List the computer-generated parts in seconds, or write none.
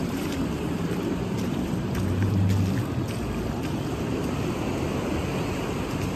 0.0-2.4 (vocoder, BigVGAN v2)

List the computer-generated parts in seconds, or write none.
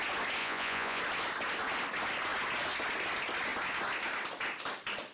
0.4-1.0 (vocoder, Vocos)